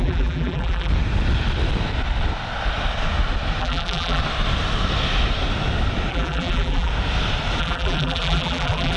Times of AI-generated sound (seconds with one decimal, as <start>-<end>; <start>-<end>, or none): 0.0-0.9; 3.6-4.2; 6.1-6.9; 7.6-9.0